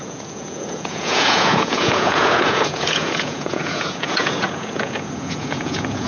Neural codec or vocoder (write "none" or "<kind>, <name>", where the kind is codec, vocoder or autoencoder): vocoder, Vocos